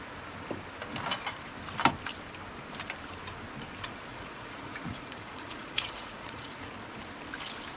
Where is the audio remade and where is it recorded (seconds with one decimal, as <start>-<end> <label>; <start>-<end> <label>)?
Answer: 0.0-4.1 recorded; 4.1-6.7 remade; 6.7-7.8 recorded